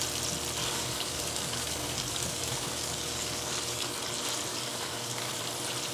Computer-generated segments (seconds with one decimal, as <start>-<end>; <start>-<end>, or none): 0.6-4.0; 4.5-5.4